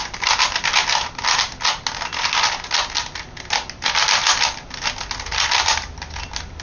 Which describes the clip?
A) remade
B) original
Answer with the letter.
B